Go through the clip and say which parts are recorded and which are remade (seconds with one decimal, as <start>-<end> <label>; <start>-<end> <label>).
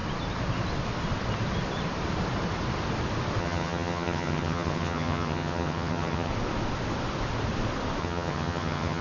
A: 0.0-3.4 recorded; 3.4-6.3 remade; 6.3-8.0 recorded; 8.0-9.0 remade